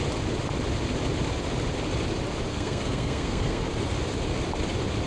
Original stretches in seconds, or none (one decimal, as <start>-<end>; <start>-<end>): 0.0-2.5; 3.7-5.1